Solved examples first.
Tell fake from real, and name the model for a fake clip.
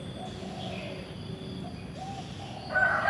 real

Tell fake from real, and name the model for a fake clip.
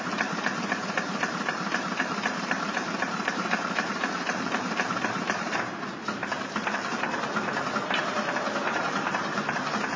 fake, vocoder, BigVGAN v2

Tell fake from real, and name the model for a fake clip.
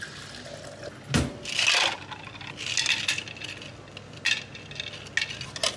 real